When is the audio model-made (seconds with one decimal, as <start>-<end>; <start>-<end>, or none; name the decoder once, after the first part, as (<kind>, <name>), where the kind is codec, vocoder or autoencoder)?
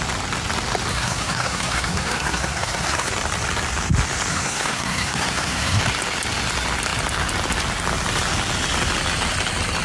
0.9-3.1 (codec, SNAC); 4.3-5.8